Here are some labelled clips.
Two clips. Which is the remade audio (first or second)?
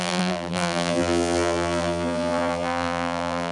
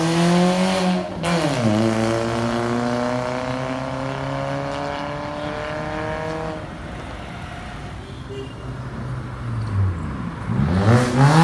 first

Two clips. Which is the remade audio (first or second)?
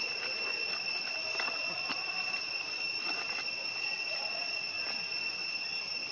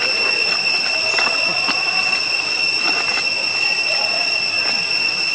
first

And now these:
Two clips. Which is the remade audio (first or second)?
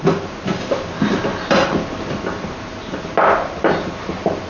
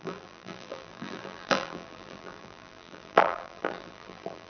second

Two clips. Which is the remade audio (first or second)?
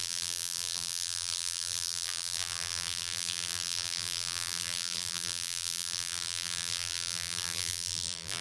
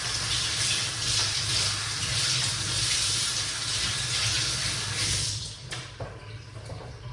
first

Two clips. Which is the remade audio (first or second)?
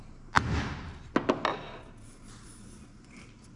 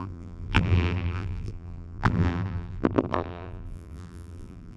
second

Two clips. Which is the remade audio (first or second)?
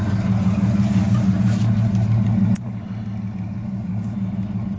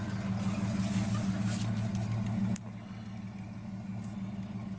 first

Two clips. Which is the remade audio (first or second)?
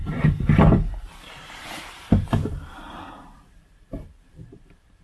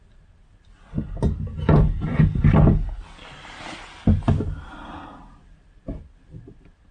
first